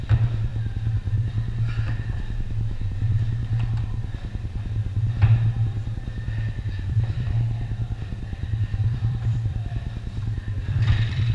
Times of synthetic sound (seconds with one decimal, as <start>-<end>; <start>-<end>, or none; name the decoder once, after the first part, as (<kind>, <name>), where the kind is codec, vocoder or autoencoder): 0.0-0.5 (vocoder, BigVGAN v2); 5.3-11.3